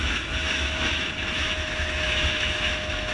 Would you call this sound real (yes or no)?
no